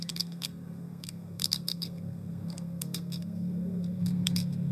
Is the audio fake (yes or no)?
yes